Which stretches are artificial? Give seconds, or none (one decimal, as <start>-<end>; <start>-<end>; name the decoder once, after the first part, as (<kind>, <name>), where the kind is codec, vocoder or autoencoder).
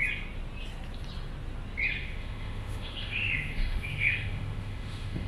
2.0-5.3 (autoencoder, DAC-VAE)